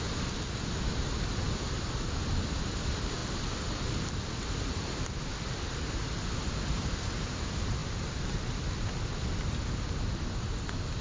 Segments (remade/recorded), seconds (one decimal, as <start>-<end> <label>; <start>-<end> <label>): 0.0-11.0 recorded